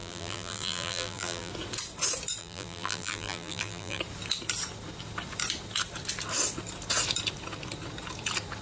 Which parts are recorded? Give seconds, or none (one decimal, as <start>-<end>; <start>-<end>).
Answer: 1.5-2.4; 4.0-8.6